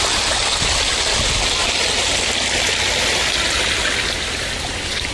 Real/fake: real